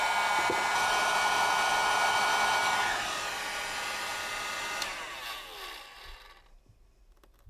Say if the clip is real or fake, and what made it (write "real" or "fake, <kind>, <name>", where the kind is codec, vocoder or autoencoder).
real